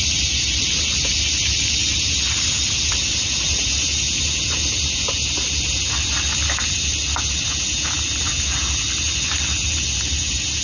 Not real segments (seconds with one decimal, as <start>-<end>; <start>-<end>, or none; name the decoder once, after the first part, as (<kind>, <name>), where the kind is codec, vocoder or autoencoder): none